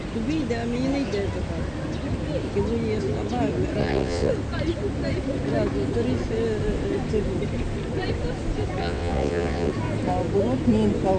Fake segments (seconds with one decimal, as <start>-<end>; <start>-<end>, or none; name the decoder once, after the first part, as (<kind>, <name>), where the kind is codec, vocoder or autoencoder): 3.8-4.3 (vocoder, WaveNeXt); 8.8-9.7